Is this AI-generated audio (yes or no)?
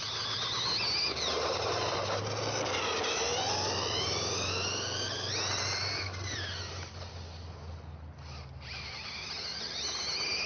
no